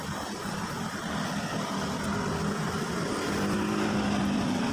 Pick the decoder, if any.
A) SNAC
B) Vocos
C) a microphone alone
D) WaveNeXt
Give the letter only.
C